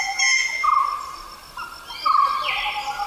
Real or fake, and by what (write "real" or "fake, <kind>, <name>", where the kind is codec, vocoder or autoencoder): real